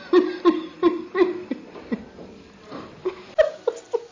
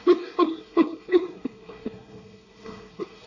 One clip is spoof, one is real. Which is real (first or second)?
first